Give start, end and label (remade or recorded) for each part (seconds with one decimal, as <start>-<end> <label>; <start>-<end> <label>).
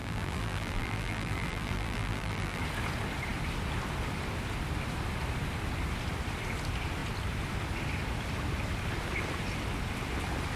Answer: 0.0-2.6 remade; 2.6-10.6 recorded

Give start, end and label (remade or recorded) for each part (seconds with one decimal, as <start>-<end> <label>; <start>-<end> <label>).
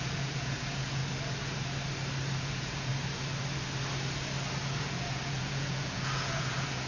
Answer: 0.0-1.0 remade; 1.0-2.4 recorded; 2.4-2.9 remade; 2.9-4.6 recorded; 4.6-6.9 remade